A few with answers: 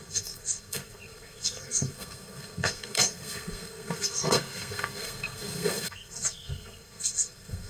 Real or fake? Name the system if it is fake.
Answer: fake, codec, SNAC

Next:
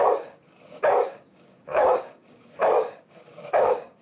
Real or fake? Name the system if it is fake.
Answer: fake, codec, DAC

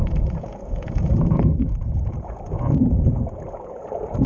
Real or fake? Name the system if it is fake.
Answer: fake, vocoder, Vocos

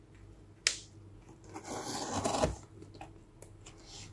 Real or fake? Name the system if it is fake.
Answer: real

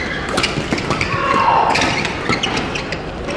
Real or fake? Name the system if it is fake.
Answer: real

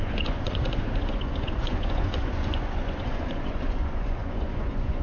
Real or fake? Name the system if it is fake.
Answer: fake, vocoder, Vocos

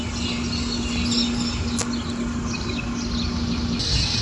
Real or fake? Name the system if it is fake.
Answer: real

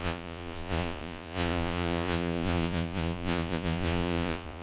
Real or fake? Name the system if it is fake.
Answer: fake, vocoder, Vocos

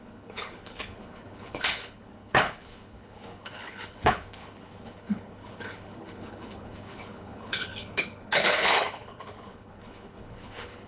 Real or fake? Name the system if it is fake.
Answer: fake, codec, HILCodec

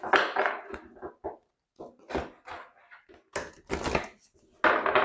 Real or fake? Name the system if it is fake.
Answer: real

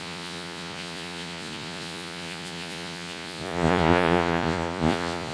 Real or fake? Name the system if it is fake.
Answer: fake, vocoder, Vocos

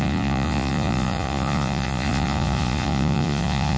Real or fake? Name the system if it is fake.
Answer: fake, vocoder, Vocos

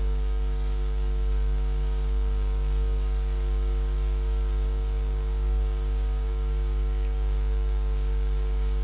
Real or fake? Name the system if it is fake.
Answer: fake, codec, DAC